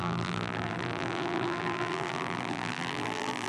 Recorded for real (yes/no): no